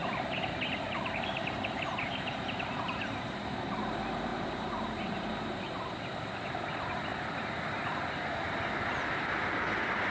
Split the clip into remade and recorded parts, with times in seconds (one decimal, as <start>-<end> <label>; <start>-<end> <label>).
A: 0.0-3.4 remade; 3.4-4.3 recorded; 4.3-5.9 remade; 5.9-10.1 recorded